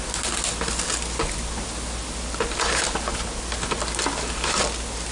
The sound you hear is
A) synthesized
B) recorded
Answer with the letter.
B